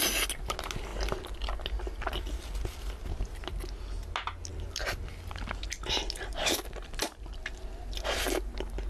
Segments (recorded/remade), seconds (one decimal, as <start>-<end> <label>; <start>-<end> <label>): 0.0-8.9 recorded